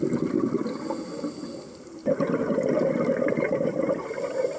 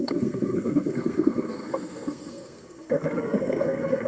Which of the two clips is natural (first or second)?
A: first